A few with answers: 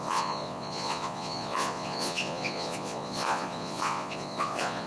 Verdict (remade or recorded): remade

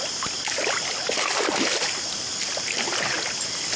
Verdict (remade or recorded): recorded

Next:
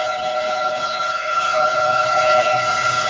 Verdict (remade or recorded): remade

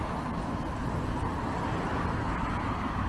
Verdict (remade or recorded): recorded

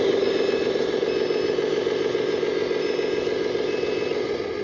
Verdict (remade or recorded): recorded